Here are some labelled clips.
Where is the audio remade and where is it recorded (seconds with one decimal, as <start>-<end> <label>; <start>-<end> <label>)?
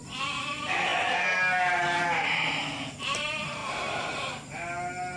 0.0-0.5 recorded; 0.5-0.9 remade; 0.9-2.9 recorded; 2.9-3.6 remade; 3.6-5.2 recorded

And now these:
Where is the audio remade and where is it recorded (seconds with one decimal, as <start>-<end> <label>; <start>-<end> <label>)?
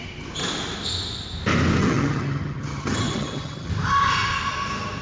0.0-1.8 recorded; 1.8-3.7 remade; 3.7-5.0 recorded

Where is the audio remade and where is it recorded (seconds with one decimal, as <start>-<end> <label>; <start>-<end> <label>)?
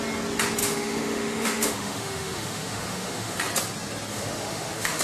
0.0-0.6 recorded; 0.6-3.4 remade; 3.4-4.1 recorded; 4.1-5.0 remade